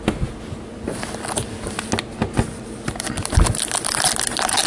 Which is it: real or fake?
real